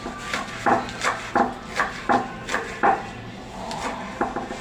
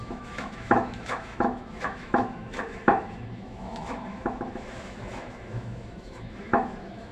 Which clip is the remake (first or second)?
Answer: second